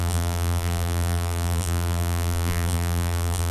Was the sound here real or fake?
fake